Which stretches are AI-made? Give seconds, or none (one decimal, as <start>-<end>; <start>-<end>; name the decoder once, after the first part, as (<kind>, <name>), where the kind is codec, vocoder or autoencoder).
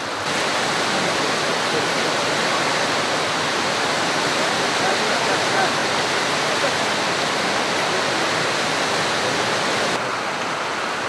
none